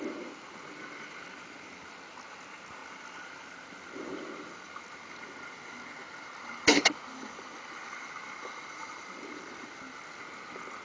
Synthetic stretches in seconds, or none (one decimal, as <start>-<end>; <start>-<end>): none